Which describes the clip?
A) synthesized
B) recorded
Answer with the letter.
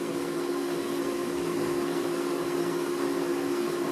A